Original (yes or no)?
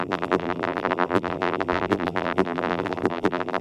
no